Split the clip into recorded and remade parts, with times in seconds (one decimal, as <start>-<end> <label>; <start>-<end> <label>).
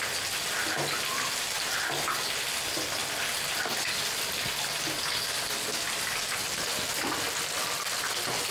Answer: 0.0-8.5 recorded